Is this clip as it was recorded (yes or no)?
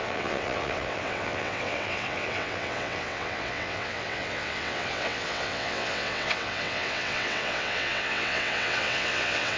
no